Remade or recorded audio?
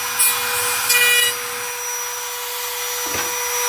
recorded